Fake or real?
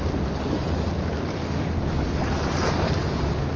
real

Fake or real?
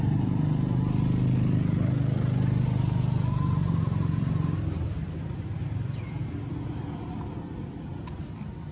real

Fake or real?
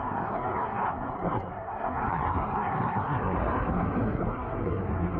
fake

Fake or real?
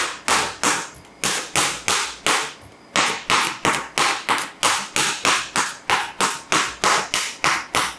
real